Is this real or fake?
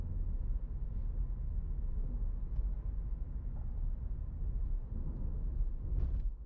real